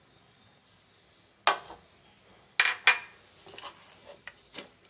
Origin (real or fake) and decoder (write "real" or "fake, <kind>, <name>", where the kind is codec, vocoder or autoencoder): real